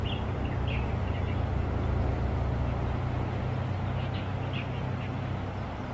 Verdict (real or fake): real